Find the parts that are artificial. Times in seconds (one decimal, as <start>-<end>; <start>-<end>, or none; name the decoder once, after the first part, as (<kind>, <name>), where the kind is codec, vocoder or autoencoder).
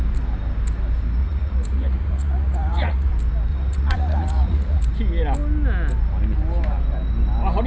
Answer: 1.2-3.1 (vocoder, Vocos); 3.5-4.8